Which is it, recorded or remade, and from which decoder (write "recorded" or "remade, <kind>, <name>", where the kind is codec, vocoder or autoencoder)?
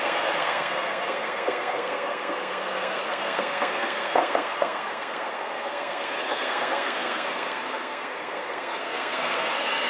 remade, codec, SNAC